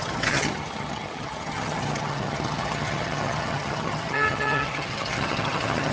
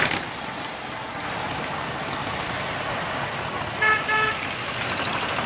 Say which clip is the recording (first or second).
second